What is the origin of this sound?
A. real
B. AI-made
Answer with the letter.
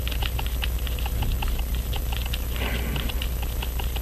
A